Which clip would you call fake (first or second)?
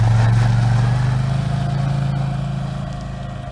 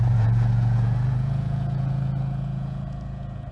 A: second